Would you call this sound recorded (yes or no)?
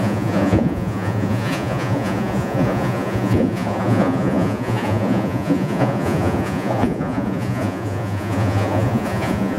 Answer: no